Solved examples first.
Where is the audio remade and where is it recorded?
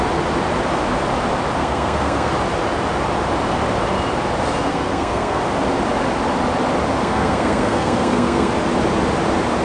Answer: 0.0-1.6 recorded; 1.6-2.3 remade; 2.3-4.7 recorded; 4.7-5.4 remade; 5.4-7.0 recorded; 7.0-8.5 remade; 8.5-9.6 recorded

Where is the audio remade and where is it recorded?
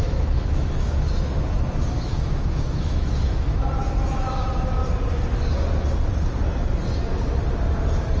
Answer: 0.0-4.8 remade; 4.8-8.2 recorded